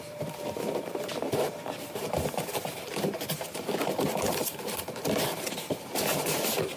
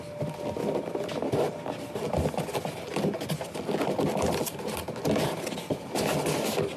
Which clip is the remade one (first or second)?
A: first